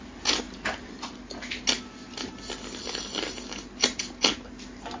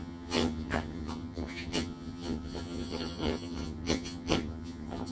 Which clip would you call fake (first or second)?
second